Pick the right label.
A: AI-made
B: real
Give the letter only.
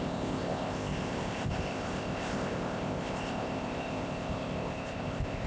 A